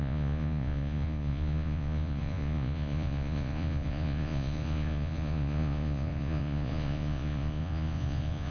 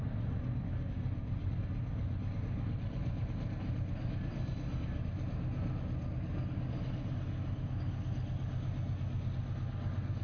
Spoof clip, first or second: first